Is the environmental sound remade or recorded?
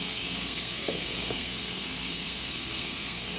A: remade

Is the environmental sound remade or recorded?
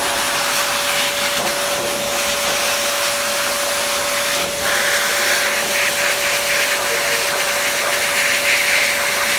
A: recorded